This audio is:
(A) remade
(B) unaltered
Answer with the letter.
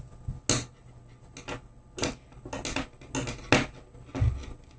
B